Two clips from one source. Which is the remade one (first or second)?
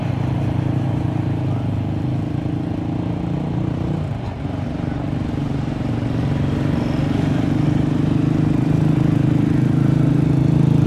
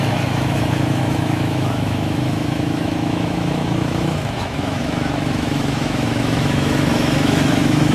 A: second